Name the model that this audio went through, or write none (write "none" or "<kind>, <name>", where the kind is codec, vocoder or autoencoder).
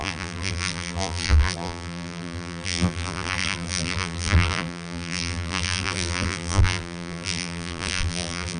vocoder, BigVGAN v2